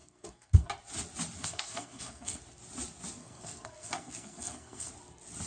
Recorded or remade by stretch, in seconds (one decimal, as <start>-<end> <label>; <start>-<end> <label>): 0.0-0.7 remade; 0.7-1.4 recorded; 1.4-2.4 remade; 2.4-3.2 recorded; 3.2-4.9 remade; 4.9-5.5 recorded